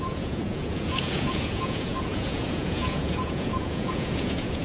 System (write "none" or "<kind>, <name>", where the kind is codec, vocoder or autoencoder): vocoder, Vocos